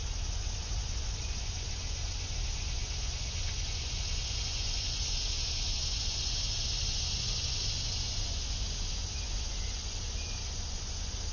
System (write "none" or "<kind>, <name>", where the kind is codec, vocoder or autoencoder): vocoder, Vocos